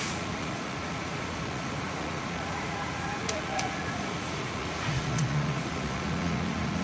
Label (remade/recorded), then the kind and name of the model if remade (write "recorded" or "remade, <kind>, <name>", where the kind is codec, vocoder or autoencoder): remade, vocoder, Vocos